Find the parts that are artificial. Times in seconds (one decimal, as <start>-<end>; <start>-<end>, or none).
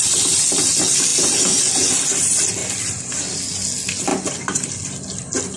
none